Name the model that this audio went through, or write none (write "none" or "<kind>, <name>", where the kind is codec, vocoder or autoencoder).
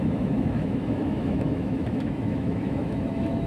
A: autoencoder, DAC-VAE